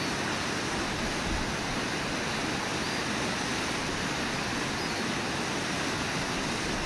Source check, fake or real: real